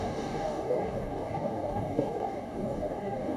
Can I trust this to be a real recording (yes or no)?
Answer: no